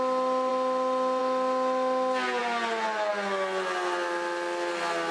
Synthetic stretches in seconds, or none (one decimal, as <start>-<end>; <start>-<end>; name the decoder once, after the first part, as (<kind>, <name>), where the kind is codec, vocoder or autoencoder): none